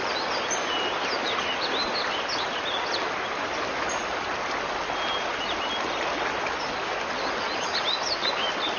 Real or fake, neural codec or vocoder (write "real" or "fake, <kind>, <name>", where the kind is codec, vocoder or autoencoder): real